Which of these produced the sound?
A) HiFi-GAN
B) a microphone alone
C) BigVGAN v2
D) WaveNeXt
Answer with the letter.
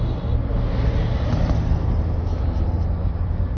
B